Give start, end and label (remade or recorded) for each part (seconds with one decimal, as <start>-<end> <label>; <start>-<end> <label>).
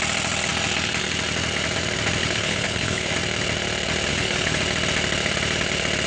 0.0-2.2 recorded; 2.2-3.1 remade; 3.1-4.1 recorded; 4.1-4.6 remade; 4.6-6.1 recorded